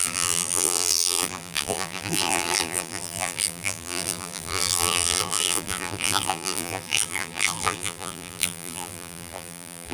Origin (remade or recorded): remade